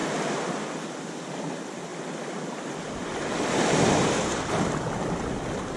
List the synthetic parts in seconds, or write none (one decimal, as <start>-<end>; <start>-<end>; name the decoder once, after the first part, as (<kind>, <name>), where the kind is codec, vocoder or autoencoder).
1.9-4.5 (vocoder, BigVGAN v2)